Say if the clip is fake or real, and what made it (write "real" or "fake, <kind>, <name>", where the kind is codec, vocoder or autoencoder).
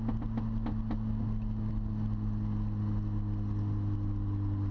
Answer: real